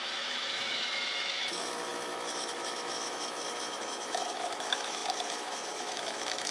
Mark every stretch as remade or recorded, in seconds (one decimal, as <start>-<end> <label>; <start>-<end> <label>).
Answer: 0.0-6.5 remade